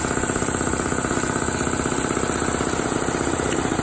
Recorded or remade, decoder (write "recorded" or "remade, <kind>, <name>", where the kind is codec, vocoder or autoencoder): recorded